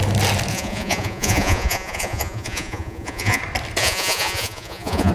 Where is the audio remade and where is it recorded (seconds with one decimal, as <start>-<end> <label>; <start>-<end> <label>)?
0.0-0.5 recorded; 0.5-3.4 remade; 3.4-3.8 recorded; 3.8-5.1 remade